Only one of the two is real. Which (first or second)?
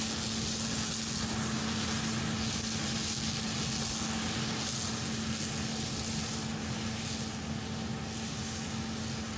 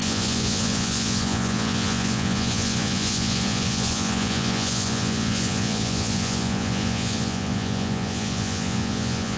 first